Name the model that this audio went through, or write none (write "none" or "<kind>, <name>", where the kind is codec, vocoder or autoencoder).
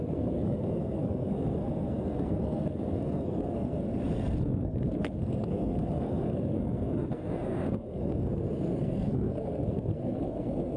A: codec, SNAC